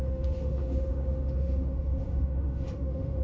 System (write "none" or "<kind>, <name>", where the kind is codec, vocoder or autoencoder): autoencoder, DAC-VAE